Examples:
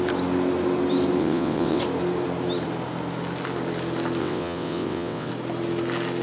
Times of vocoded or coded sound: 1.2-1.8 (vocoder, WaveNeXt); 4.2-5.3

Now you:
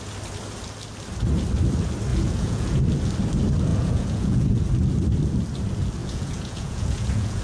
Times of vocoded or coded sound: 2.1-2.8 (vocoder, Vocos); 3.7-4.7; 6.0-7.4